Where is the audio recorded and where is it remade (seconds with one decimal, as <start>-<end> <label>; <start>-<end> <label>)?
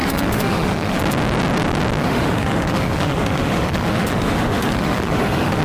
0.0-1.0 remade; 1.0-2.0 recorded; 2.0-5.6 remade